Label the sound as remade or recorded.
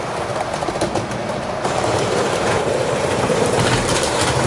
remade